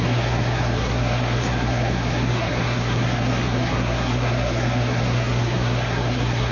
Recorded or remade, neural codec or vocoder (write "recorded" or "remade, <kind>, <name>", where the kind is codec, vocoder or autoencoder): remade, codec, SNAC